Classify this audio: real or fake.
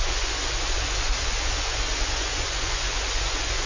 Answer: fake